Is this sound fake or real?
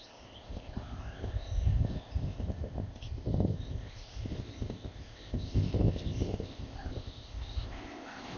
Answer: fake